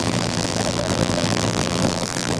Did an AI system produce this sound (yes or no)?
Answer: yes